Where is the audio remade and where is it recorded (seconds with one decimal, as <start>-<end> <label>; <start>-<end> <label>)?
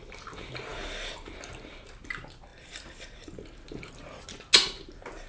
0.0-5.3 recorded